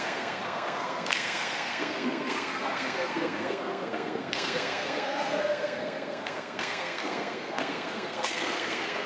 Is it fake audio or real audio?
fake